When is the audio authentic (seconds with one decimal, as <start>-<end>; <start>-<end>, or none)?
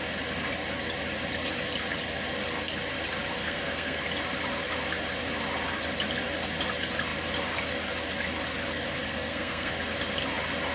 0.0-3.4; 4.0-9.0; 9.7-10.7